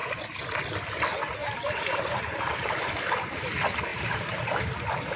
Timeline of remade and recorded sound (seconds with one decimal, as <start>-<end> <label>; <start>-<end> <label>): 0.0-1.4 recorded; 1.4-2.7 remade; 2.7-3.9 recorded; 3.9-4.6 remade; 4.6-5.2 recorded